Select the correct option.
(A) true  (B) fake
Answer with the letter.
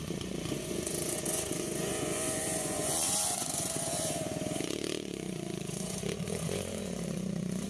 B